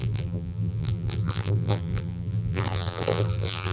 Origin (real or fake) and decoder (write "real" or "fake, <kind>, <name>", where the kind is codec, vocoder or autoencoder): fake, vocoder, BigVGAN v2